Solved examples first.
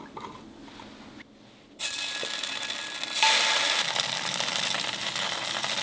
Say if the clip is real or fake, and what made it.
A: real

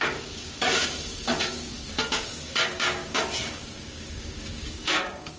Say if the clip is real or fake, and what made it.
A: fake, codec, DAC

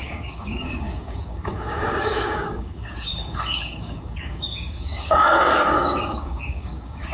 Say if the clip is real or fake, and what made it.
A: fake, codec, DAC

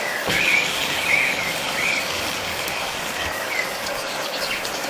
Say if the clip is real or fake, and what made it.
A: fake, codec, DAC